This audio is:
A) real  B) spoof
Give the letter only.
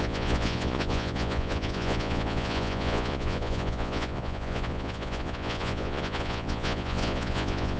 B